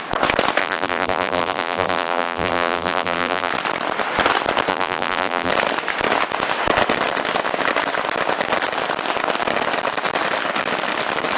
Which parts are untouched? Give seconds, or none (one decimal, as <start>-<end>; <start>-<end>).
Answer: 0.0-0.6; 3.5-4.7; 5.5-11.4